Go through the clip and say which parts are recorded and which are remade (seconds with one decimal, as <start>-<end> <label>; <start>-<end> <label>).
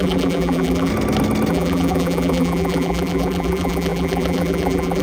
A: 0.0-0.9 remade; 0.9-1.5 recorded; 1.5-5.0 remade